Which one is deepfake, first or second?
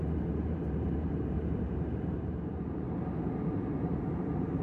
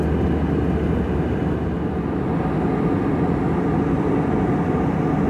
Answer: first